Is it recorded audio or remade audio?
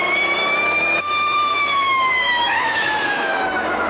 remade